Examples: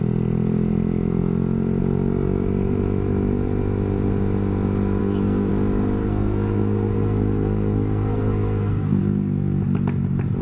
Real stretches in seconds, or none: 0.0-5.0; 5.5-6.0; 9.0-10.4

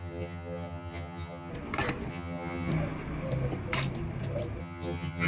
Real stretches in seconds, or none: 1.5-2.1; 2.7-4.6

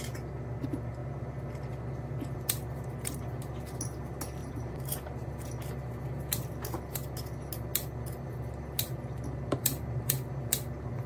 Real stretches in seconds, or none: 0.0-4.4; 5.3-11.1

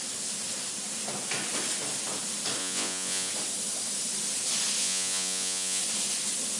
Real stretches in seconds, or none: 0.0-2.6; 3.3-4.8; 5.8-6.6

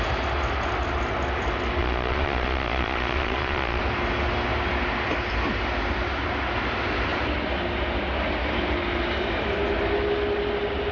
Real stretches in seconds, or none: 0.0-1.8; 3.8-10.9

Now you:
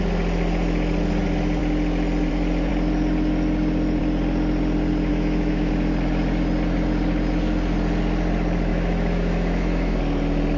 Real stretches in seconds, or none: 0.0-5.1; 5.7-8.7; 10.0-10.6

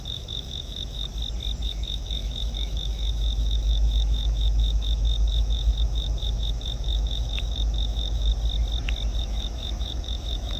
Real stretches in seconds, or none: 1.1-1.6; 8.3-9.2